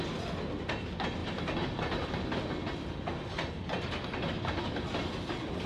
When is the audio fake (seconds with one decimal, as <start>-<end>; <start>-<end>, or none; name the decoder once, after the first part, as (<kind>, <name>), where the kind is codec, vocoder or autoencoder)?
none